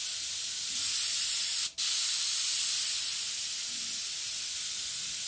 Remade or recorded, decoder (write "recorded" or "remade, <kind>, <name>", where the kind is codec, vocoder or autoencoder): recorded